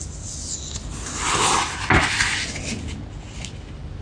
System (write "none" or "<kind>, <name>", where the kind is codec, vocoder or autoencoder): none